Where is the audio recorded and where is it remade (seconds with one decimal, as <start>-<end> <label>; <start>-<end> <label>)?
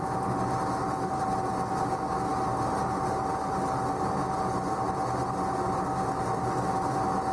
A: 0.0-7.3 recorded